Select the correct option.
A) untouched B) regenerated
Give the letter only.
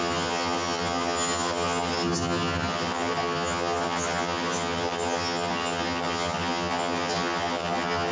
B